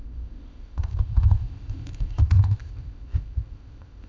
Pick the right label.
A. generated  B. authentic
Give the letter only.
A